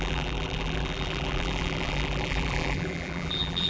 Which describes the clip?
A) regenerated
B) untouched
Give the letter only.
A